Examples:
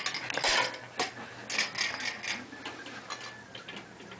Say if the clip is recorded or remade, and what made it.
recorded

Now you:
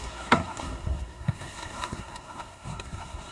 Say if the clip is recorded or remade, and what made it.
remade, codec, SNAC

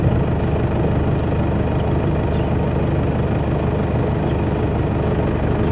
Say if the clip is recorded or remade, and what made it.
recorded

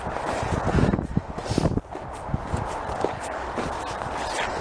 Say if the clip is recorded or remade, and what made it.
recorded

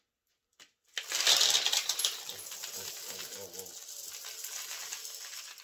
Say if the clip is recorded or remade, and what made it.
recorded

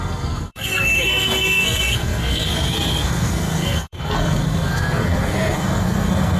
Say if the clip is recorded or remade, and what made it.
remade, codec, SNAC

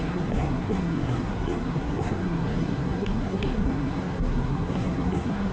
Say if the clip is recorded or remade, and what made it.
remade, codec, SNAC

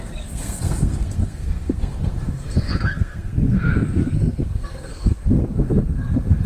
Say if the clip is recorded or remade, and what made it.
remade, codec, SNAC